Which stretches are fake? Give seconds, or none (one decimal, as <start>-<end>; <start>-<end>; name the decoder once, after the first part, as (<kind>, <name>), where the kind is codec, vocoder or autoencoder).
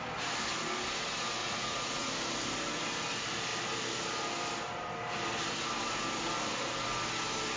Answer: 1.4-2.1 (vocoder, Vocos)